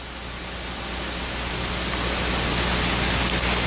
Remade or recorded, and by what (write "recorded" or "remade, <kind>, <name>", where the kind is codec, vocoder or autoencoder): recorded